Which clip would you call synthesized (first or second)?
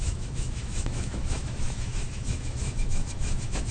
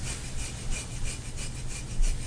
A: first